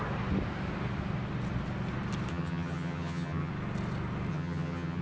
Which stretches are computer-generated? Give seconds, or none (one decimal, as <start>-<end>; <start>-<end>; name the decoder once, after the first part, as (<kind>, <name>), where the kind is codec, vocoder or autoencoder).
2.3-3.5 (vocoder, HiFi-GAN); 4.3-5.0